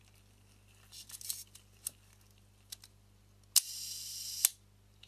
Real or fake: real